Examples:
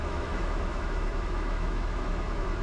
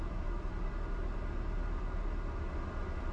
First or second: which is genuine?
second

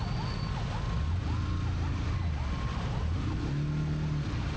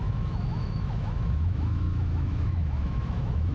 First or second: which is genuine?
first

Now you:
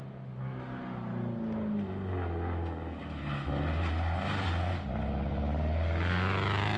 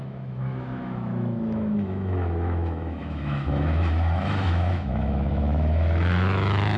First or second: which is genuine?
first